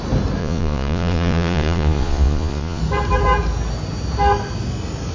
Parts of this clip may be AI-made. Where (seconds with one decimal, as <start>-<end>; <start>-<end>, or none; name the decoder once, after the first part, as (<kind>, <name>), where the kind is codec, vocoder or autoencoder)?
0.4-2.8 (vocoder, Vocos)